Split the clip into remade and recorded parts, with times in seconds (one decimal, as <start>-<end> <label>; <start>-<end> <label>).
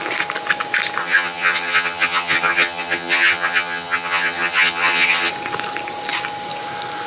0.0-1.0 recorded; 1.0-5.3 remade; 5.3-7.1 recorded